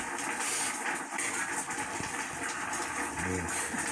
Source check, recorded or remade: recorded